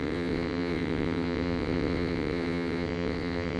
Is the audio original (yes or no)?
no